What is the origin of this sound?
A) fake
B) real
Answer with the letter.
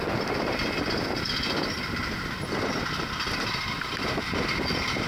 B